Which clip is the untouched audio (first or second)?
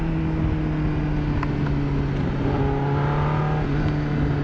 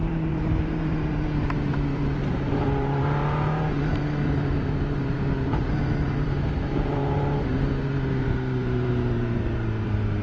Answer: first